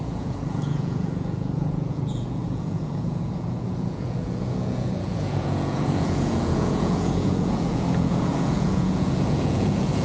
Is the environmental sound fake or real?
fake